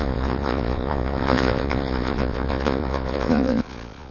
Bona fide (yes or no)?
no